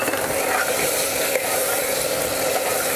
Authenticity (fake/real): real